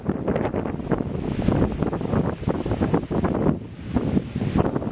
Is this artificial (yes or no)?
no